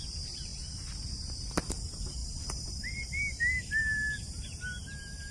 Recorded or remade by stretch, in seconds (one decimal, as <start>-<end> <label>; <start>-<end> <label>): 0.0-5.3 recorded